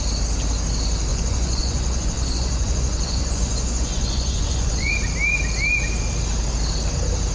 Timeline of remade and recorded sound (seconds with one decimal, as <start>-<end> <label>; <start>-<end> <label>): 0.0-1.1 recorded; 1.1-4.9 remade; 4.9-7.3 recorded